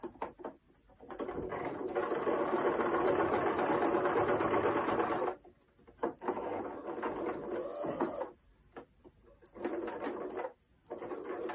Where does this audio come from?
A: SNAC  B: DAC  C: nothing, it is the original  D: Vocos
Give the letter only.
C